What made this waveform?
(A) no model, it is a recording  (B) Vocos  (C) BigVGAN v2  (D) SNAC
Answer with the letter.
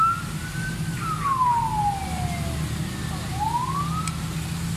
A